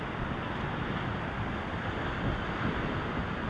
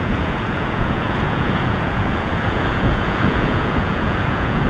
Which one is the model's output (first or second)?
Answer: second